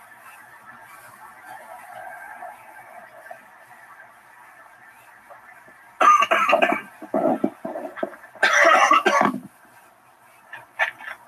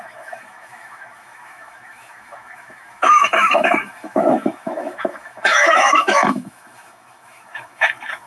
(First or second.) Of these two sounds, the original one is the first